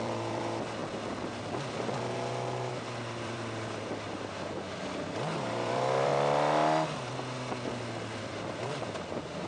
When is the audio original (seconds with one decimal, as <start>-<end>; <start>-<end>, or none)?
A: 0.8-2.7; 6.1-7.8